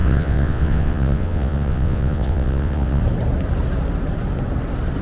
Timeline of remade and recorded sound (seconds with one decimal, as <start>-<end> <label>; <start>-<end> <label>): 0.0-3.0 remade; 3.0-5.0 recorded